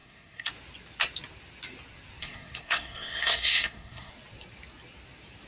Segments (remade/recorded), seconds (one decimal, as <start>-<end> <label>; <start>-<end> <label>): 0.0-0.5 remade; 0.5-2.2 recorded; 2.2-4.1 remade; 4.1-5.5 recorded